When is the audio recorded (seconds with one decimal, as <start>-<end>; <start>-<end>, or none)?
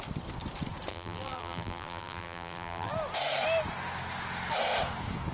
0.0-0.9; 2.9-5.3